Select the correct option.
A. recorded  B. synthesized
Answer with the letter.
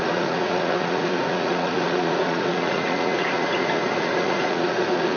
B